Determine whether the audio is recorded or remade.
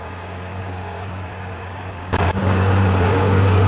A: remade